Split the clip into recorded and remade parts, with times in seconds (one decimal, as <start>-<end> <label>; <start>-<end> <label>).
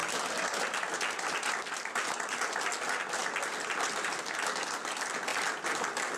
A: 0.0-3.2 recorded; 3.2-4.1 remade; 4.1-5.3 recorded; 5.3-6.2 remade